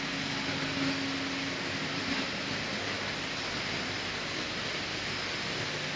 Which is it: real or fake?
real